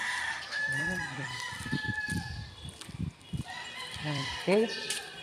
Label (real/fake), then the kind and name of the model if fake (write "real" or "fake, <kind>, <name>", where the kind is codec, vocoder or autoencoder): fake, vocoder, BigVGAN v2